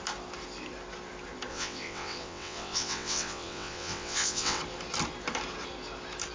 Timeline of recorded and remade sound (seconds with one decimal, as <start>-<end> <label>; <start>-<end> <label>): 0.0-1.5 recorded; 1.5-4.6 remade; 4.6-6.3 recorded